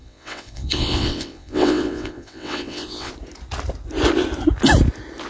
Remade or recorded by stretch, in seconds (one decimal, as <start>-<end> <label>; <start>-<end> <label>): 0.0-3.1 remade; 3.1-5.3 recorded